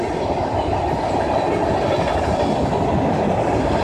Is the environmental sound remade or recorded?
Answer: recorded